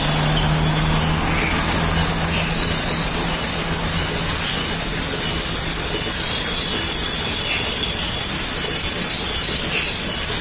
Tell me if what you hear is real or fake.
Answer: real